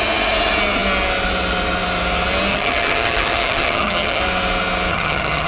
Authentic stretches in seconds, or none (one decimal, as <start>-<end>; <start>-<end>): 0.0-2.5; 4.2-4.9